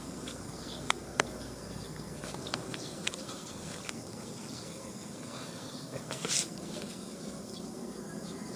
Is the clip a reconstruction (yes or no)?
yes